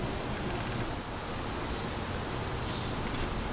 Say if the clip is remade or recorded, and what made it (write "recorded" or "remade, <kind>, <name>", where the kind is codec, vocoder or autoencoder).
recorded